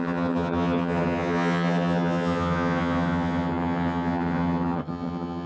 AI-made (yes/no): yes